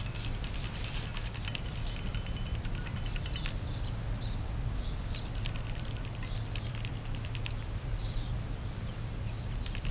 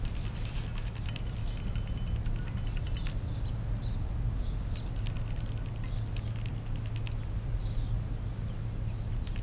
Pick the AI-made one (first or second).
first